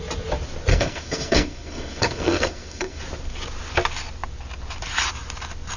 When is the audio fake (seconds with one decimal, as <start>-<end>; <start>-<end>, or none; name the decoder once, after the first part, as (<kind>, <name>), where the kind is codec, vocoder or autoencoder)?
0.7-3.0 (codec, SNAC)

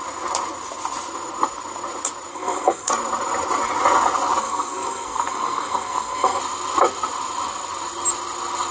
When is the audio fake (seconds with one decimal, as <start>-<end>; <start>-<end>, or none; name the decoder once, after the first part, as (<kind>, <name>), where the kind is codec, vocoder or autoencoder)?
2.3-2.9 (codec, SNAC); 4.4-6.4